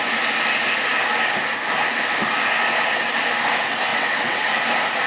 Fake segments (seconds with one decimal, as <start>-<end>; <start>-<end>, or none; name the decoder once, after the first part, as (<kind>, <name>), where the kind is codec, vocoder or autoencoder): 3.9-4.5 (vocoder, WaveNeXt)